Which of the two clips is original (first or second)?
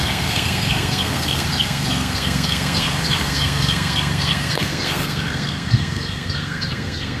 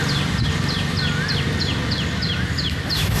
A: second